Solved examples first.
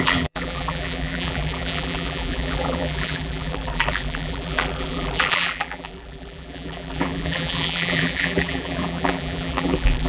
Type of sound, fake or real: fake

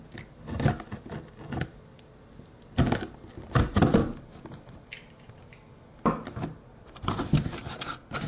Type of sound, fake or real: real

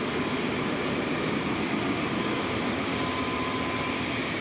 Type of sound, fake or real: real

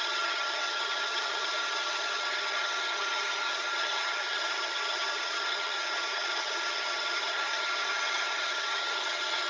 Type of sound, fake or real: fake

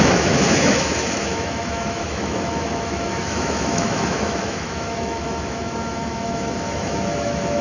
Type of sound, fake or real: fake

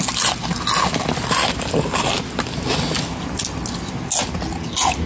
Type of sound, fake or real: real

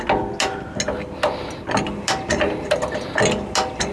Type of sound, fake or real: real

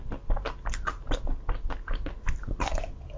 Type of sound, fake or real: real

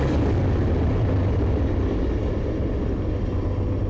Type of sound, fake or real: real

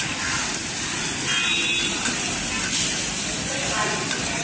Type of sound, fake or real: real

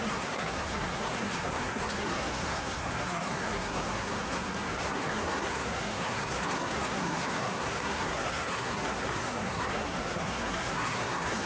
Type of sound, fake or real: fake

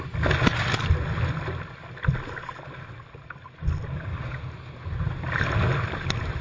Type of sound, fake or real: real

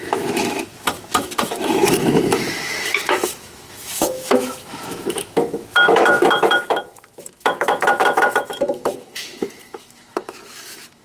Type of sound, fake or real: fake